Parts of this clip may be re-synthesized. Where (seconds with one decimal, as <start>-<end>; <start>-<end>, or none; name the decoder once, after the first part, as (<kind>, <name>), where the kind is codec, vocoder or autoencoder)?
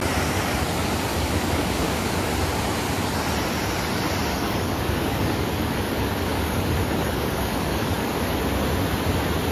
1.1-2.3 (codec, DAC); 4.3-8.4